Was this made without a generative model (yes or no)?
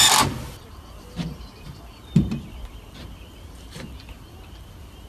yes